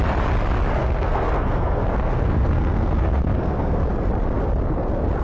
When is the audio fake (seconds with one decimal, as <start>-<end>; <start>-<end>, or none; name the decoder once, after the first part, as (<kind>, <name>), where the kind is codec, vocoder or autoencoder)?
0.8-3.8 (codec, SNAC)